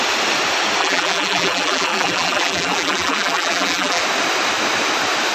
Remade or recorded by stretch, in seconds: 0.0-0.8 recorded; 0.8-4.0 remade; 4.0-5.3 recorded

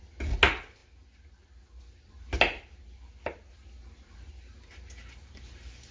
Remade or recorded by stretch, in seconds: 0.0-5.9 recorded

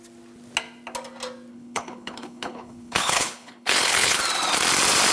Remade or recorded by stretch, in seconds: 0.0-1.5 recorded; 1.5-4.2 remade; 4.2-5.1 recorded

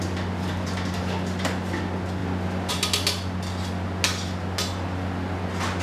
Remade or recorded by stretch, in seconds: 0.0-5.8 recorded

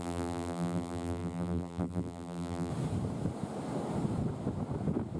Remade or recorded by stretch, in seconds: 0.0-2.7 remade; 2.7-5.2 recorded

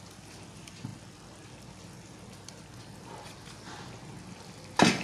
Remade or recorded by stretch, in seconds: 0.0-5.0 recorded

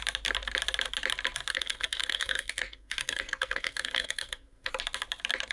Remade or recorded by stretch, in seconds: 0.0-1.5 recorded; 1.5-4.7 remade; 4.7-5.5 recorded